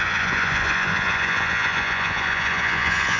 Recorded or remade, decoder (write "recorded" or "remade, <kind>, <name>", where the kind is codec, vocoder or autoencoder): remade, vocoder, Vocos